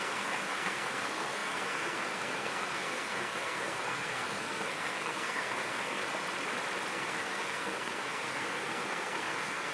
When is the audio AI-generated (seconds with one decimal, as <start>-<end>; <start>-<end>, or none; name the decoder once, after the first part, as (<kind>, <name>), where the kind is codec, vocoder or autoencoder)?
0.0-6.0 (codec, SNAC); 6.9-9.7